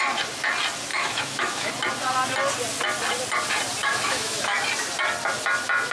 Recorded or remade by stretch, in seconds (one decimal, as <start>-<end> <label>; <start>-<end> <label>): 0.0-0.9 recorded; 0.9-1.7 remade; 1.7-3.8 recorded; 3.8-4.6 remade; 4.6-5.9 recorded